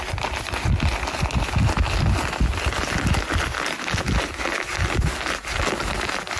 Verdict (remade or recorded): recorded